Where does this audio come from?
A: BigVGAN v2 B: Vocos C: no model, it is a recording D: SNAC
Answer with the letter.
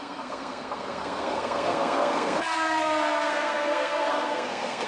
D